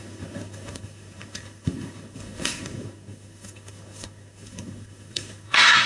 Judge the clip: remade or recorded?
remade